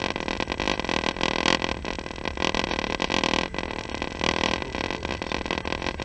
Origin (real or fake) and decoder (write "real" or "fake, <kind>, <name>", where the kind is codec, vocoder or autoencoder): real